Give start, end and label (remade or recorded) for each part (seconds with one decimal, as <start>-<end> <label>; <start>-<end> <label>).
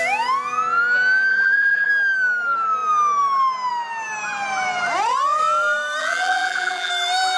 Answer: 0.0-1.3 recorded; 1.3-1.9 remade; 1.9-6.0 recorded; 6.0-6.9 remade; 6.9-7.4 recorded